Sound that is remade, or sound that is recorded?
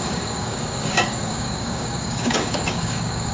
remade